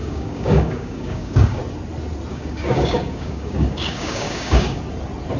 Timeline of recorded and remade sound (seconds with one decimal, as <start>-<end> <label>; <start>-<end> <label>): 0.0-1.6 remade; 1.6-2.3 recorded; 2.3-4.8 remade; 4.8-5.4 recorded